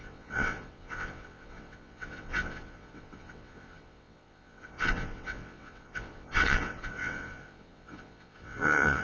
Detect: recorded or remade remade